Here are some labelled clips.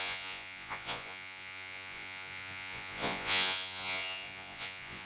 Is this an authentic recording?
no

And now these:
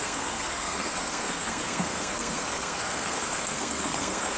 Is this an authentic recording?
no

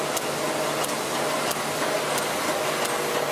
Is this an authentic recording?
yes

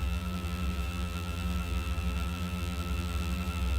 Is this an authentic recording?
no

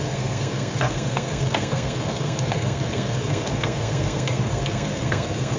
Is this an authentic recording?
no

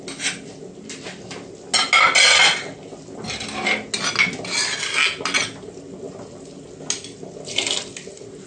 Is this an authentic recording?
yes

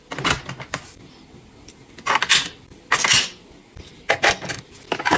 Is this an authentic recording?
yes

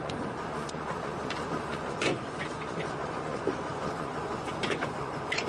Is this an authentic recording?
no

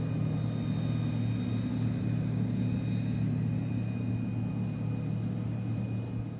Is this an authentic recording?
yes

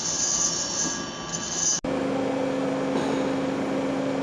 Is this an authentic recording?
yes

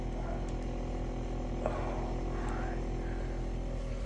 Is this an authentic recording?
yes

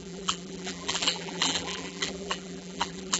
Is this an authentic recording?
no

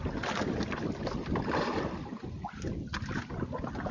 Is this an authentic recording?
yes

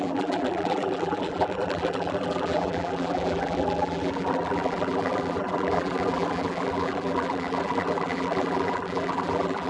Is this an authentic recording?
no